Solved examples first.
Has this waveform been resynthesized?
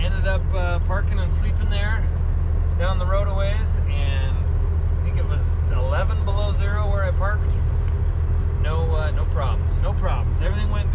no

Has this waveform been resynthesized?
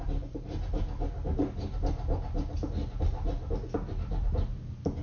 no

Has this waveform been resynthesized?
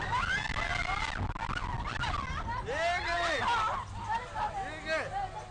no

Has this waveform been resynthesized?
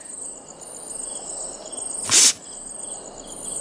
no